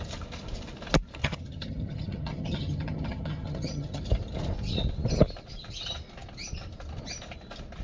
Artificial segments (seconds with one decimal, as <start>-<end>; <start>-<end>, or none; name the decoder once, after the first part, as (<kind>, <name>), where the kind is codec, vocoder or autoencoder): 1.2-4.0 (vocoder, HiFi-GAN)